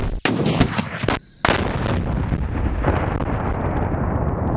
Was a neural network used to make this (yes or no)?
no